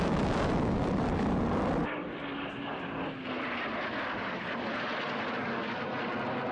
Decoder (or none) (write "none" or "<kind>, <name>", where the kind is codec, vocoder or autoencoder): none